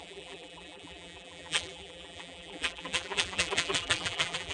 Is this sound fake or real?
fake